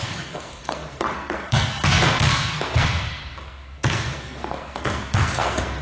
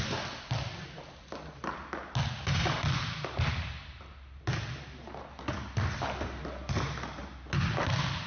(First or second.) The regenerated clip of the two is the first